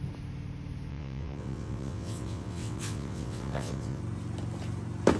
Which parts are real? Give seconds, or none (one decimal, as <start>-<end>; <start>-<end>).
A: 0.0-0.9; 4.0-5.2